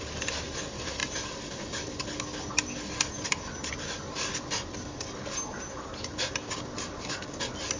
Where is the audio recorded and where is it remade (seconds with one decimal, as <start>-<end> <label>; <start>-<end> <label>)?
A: 0.0-7.8 recorded